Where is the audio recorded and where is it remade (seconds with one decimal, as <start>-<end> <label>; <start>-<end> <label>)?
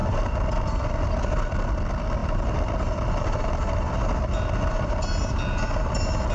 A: 0.0-6.3 remade